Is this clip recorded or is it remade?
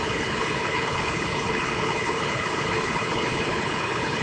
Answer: remade